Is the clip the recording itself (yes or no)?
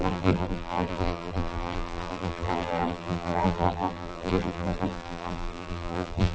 no